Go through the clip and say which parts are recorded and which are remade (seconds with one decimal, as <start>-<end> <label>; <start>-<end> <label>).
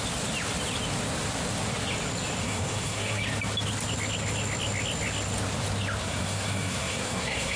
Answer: 0.0-2.4 recorded; 2.4-3.2 remade; 3.2-6.0 recorded; 6.0-7.6 remade